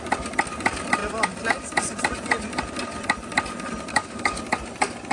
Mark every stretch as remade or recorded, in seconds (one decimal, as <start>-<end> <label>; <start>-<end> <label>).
0.0-3.9 recorded; 3.9-4.4 remade; 4.4-5.1 recorded